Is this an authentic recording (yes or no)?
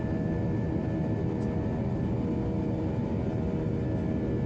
yes